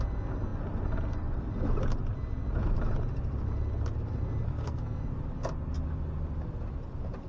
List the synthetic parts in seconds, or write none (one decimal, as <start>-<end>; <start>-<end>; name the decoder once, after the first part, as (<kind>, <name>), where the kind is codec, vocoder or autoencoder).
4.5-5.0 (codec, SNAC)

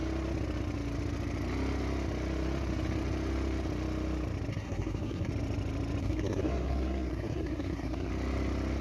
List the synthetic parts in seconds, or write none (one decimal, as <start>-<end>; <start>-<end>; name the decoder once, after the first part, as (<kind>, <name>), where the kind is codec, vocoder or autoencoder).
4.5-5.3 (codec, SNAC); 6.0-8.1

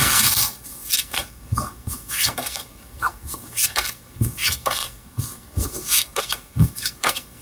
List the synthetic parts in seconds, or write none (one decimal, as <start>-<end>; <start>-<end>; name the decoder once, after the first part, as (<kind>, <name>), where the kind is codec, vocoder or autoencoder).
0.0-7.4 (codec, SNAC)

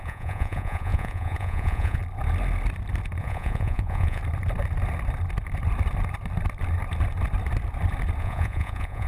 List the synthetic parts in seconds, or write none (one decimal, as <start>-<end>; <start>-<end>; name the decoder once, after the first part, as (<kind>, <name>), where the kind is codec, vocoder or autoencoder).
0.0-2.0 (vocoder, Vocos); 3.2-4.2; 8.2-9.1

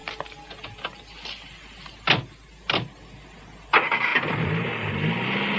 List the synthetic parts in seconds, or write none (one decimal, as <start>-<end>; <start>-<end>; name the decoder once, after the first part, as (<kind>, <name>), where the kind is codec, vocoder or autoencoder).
none